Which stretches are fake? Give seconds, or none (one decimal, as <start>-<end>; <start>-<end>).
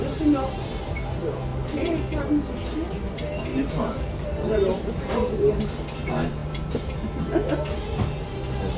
1.5-2.0; 3.5-5.6; 6.4-6.9